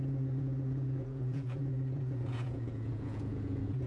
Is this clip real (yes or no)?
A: no